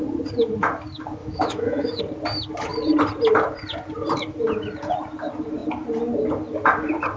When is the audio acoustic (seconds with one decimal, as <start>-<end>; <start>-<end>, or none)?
0.0-1.2; 2.0-7.2